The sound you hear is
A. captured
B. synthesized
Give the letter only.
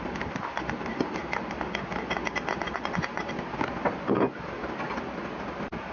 A